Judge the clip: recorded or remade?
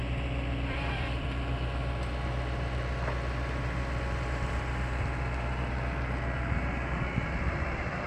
remade